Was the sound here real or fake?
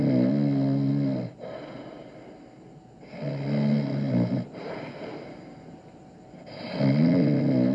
real